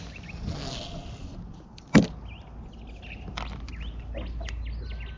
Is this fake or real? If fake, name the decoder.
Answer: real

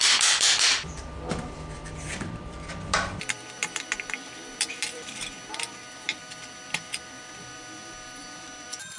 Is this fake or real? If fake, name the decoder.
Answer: fake, vocoder, BigVGAN v2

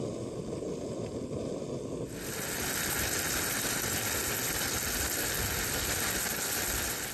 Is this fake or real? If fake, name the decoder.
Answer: real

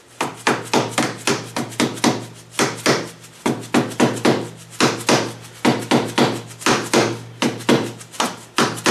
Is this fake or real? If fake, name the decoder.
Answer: real